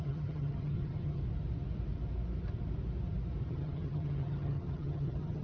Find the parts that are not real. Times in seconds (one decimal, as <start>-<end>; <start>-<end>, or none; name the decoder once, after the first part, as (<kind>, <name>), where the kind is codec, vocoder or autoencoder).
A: 0.0-1.2 (vocoder, HiFi-GAN); 3.5-5.4